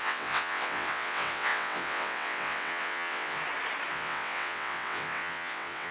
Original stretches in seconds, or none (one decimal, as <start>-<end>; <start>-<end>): 3.4-3.9